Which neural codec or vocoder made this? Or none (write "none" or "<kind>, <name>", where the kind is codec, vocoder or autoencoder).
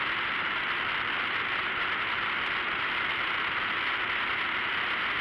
none